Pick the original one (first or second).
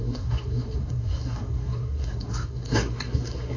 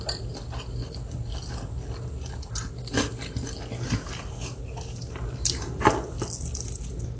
second